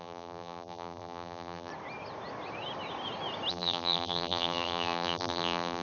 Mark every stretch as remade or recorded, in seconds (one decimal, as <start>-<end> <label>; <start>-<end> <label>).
0.0-1.7 remade; 1.7-3.5 recorded; 3.5-5.8 remade